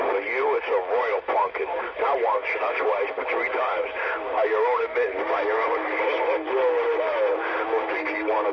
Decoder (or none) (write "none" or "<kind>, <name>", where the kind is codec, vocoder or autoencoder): vocoder, BigVGAN v2